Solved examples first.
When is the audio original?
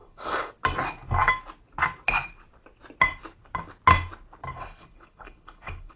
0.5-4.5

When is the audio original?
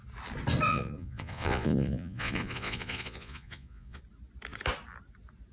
0.0-0.7; 4.0-5.5